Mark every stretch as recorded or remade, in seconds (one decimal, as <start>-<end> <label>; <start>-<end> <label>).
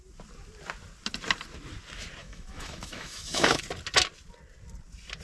0.0-2.2 recorded; 2.2-3.6 remade; 3.6-5.2 recorded